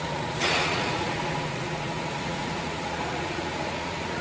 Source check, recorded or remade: remade